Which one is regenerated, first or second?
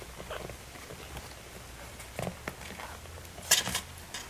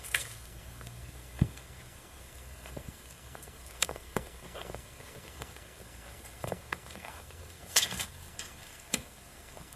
second